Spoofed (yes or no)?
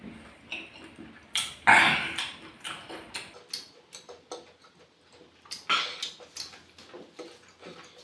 no